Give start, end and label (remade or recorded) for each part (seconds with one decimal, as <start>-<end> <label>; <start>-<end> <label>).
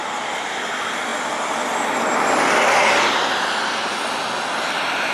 0.0-5.1 recorded